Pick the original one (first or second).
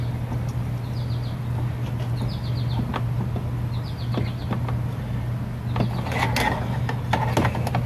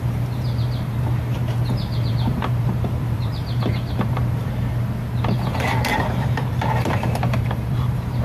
first